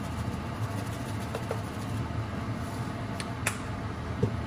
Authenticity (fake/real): real